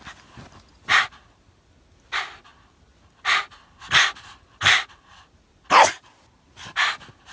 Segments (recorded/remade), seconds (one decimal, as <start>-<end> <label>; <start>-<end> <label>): 0.0-7.3 recorded